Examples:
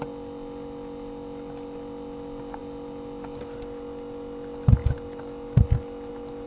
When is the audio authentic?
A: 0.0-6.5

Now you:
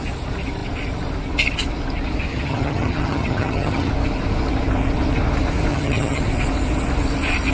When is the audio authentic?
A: 0.0-2.3; 3.9-5.7; 6.2-7.5

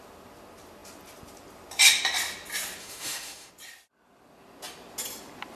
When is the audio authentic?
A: 0.0-2.8; 3.5-5.6